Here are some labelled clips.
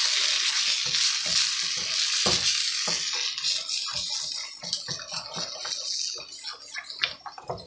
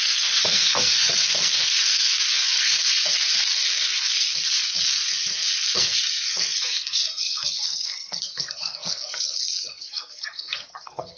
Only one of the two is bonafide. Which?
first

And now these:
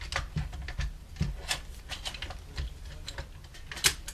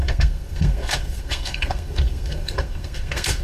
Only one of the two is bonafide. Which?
first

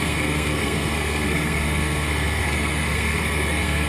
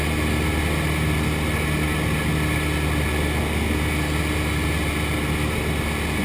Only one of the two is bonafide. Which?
second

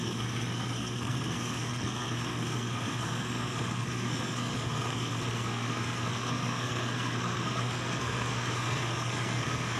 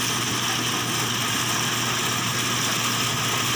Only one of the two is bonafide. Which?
second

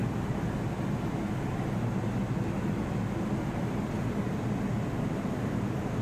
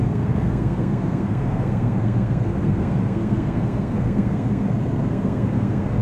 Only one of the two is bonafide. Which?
first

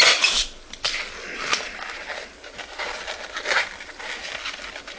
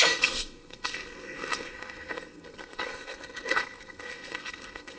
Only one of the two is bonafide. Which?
first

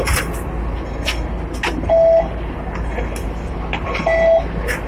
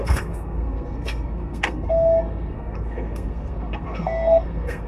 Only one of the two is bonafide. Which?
first